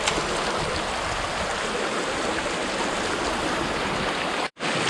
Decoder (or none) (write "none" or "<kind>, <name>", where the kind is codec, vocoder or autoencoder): none